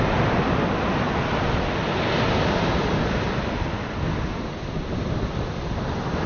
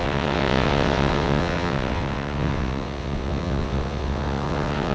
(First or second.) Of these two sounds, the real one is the first